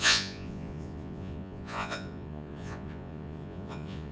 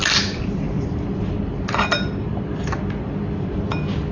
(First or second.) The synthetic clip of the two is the first